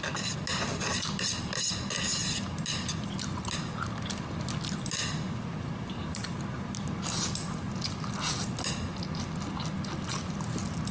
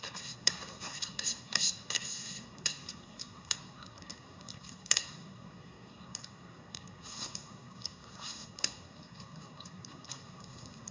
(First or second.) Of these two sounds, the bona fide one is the first